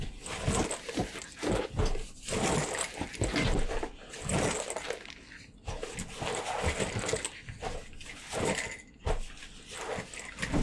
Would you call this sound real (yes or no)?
yes